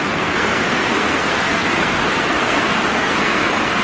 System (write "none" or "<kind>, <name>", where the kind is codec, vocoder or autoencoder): codec, SNAC